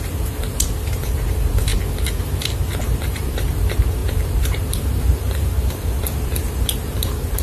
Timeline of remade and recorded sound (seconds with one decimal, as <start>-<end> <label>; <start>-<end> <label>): 0.0-1.7 remade; 1.7-2.6 recorded; 2.6-7.4 remade